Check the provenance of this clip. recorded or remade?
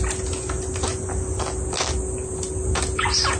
recorded